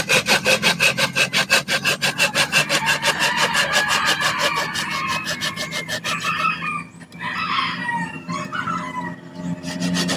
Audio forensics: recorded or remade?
recorded